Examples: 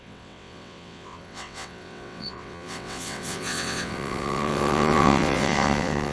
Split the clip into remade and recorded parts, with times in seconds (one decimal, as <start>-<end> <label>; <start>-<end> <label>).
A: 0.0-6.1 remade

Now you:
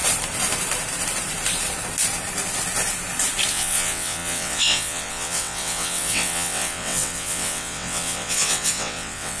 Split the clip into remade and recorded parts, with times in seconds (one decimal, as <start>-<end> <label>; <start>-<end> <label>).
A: 0.0-3.5 recorded; 3.5-9.4 remade

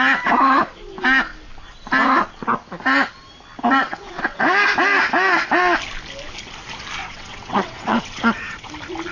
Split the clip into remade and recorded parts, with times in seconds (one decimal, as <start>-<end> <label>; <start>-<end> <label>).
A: 0.0-3.8 recorded; 3.8-4.4 remade; 4.4-7.0 recorded; 7.0-8.7 remade; 8.7-9.1 recorded

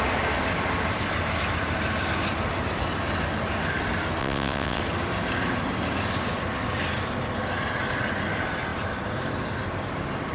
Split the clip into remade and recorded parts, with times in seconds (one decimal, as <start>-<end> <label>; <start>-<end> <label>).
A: 0.0-4.2 recorded; 4.2-4.8 remade; 4.8-10.3 recorded